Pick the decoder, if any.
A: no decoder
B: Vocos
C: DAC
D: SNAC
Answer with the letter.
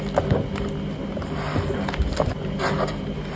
A